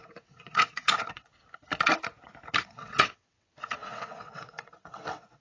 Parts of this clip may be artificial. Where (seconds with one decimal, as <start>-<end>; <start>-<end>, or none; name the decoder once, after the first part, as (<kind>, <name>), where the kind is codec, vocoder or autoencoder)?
0.0-1.3 (vocoder, WaveNeXt); 2.6-5.4